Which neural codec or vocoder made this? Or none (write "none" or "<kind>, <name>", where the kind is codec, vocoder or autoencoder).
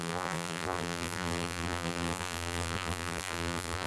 vocoder, BigVGAN v2